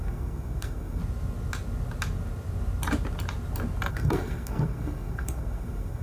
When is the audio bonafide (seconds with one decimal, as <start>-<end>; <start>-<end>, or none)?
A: 1.0-3.9